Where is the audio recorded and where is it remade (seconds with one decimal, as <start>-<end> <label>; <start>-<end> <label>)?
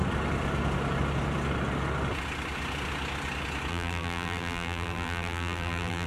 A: 0.0-3.7 recorded; 3.7-6.1 remade